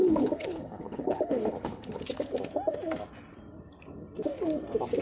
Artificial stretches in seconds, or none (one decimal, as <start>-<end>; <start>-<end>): 0.0-2.0